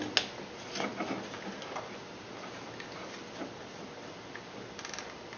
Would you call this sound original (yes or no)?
yes